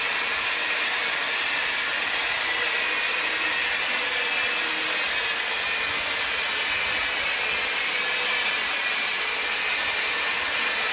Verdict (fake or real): real